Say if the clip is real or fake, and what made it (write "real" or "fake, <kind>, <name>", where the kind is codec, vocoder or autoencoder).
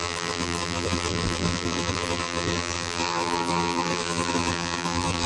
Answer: fake, vocoder, BigVGAN v2